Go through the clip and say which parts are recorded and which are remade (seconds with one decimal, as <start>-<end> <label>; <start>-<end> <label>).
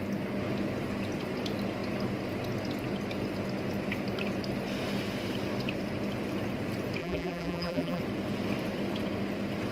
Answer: 0.0-7.0 recorded; 7.0-8.0 remade; 8.0-9.7 recorded